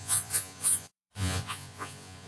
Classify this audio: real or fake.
fake